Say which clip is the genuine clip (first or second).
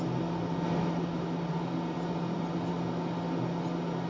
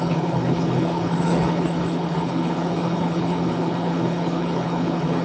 first